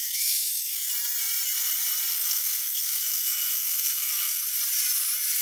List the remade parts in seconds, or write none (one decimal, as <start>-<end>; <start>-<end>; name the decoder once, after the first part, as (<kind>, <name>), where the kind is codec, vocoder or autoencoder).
0.0-0.9 (codec, SNAC); 2.1-4.4